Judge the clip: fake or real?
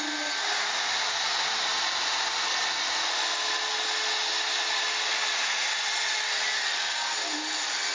real